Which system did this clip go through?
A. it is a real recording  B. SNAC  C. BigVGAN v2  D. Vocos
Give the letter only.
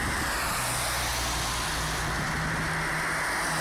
A